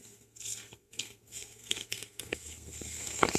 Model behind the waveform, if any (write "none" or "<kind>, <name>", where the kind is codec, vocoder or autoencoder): codec, SNAC